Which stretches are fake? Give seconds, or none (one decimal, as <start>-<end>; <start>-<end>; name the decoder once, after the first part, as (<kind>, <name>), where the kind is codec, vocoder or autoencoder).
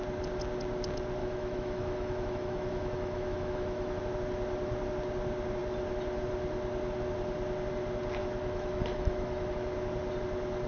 1.2-4.0 (autoencoder, DAC-VAE); 8.2-9.5